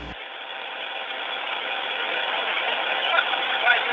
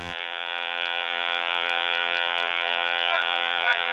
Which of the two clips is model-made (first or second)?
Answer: second